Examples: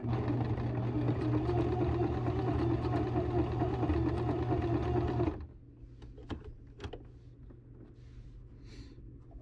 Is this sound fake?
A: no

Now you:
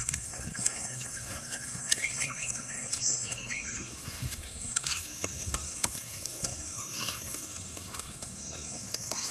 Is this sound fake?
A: yes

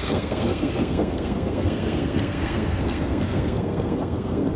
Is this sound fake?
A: yes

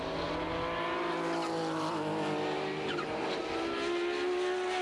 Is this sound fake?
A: no